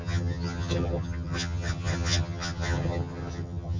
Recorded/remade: remade